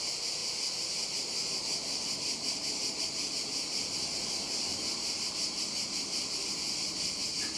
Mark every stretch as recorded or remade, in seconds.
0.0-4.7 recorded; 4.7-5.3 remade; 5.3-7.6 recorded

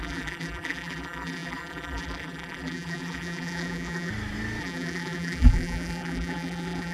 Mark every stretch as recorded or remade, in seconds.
0.0-4.1 remade; 4.1-4.6 recorded; 4.6-6.9 remade

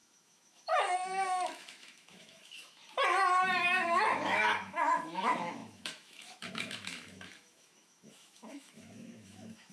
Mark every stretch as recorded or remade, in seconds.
0.0-2.8 remade; 2.8-3.6 recorded; 3.6-9.7 remade

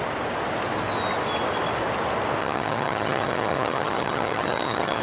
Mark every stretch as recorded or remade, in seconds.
0.0-2.4 recorded; 2.4-5.0 remade

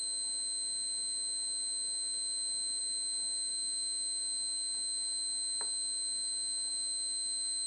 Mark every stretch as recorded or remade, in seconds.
0.0-3.5 recorded; 3.5-4.2 remade; 4.2-6.7 recorded; 6.7-7.7 remade

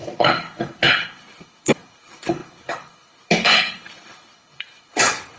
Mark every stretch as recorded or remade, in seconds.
0.0-5.4 remade